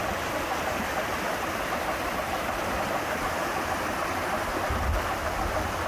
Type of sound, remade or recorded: recorded